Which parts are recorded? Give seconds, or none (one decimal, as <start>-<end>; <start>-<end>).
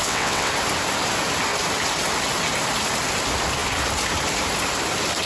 0.5-5.3